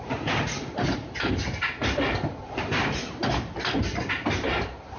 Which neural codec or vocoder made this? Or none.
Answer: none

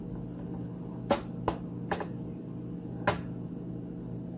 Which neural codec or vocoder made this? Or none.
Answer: none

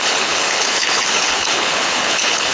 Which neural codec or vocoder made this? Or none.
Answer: codec, HILCodec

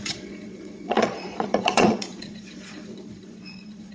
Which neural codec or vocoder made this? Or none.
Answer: vocoder, Vocos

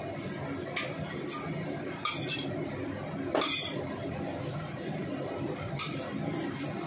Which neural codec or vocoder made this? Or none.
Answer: none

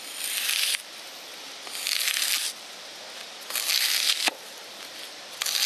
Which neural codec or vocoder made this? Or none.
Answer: none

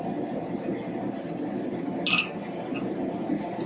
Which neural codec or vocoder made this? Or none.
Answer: none